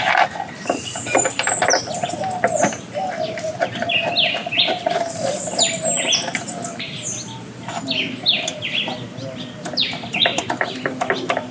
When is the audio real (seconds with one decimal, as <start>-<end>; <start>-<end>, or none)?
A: 0.0-11.5